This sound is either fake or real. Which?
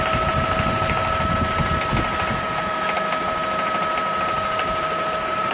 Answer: real